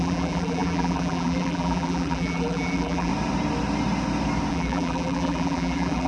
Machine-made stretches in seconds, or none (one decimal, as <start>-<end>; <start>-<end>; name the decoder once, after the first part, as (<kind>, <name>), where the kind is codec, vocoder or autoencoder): 0.0-3.1 (vocoder, BigVGAN v2); 4.5-6.1